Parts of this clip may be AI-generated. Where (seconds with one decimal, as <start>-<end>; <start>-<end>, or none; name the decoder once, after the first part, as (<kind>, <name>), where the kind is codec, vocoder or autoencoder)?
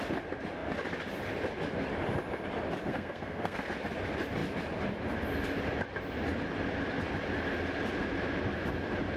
2.9-3.6 (codec, SNAC)